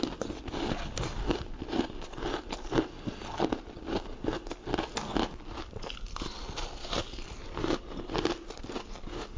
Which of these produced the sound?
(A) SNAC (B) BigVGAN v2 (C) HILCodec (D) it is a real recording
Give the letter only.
D